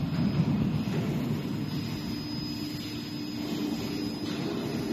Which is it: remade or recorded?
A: recorded